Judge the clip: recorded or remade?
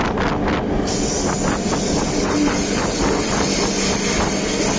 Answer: recorded